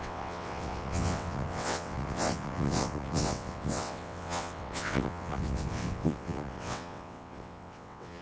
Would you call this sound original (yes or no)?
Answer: no